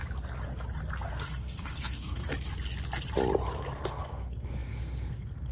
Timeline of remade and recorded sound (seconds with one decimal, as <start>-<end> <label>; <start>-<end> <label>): 0.0-1.1 recorded; 1.1-2.3 remade; 2.3-3.9 recorded; 3.9-5.5 remade